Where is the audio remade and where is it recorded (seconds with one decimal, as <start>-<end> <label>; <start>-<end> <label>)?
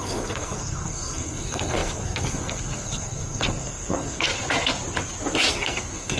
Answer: 0.0-4.3 remade; 4.3-5.5 recorded; 5.5-6.2 remade